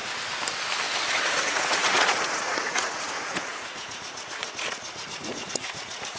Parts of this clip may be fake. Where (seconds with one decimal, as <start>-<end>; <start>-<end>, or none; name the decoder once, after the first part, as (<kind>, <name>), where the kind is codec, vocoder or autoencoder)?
1.1-6.2 (vocoder, Vocos)